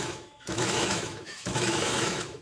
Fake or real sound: fake